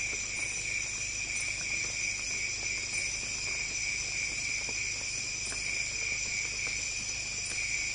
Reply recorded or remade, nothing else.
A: recorded